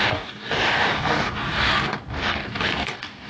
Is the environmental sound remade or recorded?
remade